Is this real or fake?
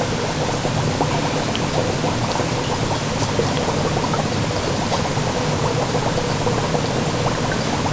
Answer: real